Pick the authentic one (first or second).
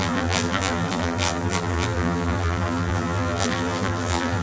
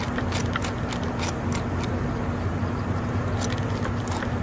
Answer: second